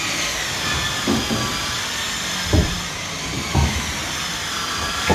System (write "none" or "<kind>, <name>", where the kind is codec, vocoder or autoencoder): vocoder, BigVGAN v2